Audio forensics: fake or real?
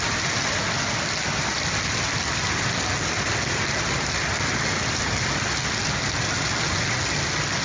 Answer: real